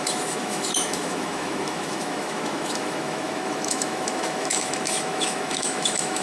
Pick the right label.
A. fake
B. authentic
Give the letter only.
A